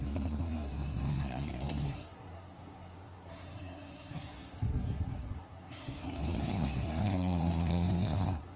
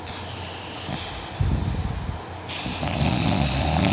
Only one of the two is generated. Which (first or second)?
first